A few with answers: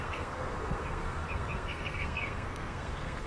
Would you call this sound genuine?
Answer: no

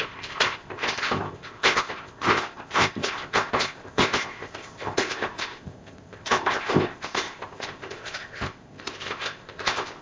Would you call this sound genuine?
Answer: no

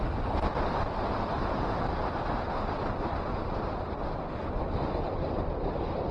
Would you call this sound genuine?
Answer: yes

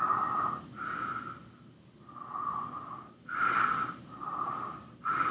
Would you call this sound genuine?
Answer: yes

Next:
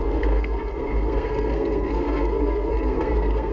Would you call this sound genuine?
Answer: no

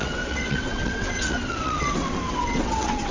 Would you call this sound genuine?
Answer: no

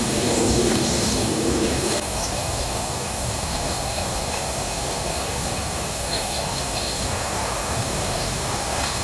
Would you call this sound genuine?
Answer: no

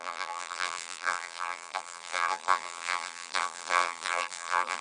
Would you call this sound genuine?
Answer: no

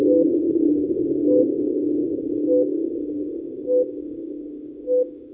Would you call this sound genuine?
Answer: no